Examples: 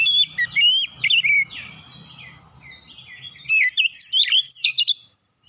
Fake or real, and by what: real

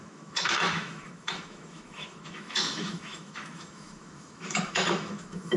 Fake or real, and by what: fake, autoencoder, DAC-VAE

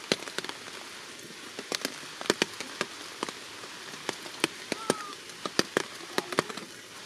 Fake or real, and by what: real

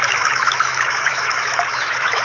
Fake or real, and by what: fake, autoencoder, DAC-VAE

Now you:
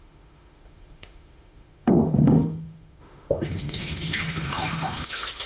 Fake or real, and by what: fake, autoencoder, DAC-VAE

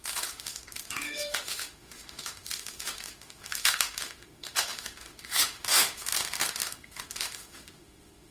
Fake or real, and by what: fake, autoencoder, DAC-VAE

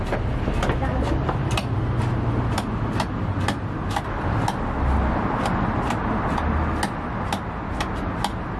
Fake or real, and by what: real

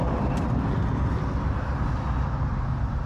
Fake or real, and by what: real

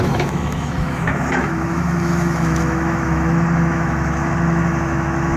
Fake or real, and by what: fake, autoencoder, DAC-VAE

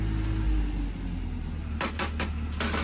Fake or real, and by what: real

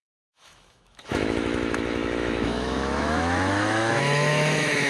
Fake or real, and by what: fake, autoencoder, DAC-VAE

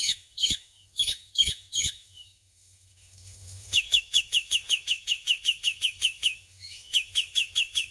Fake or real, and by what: fake, autoencoder, DAC-VAE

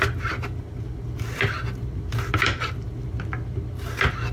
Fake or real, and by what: real